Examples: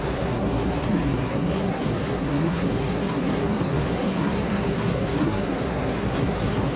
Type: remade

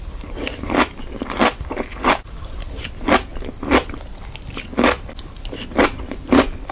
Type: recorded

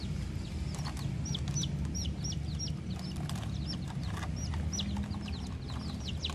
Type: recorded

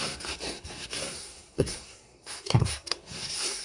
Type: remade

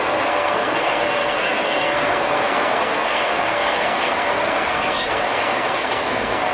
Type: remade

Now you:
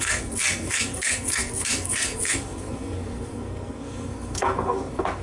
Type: remade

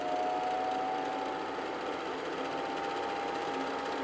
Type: recorded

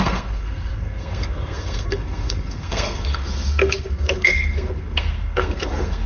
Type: remade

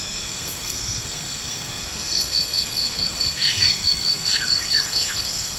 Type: remade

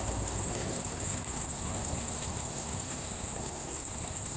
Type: remade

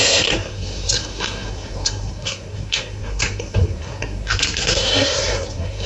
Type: remade